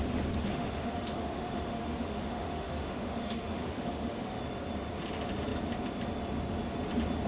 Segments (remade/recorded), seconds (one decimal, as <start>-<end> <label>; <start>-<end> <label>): 0.0-0.5 recorded; 0.5-4.4 remade; 4.4-7.3 recorded